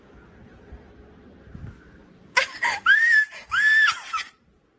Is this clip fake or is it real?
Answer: real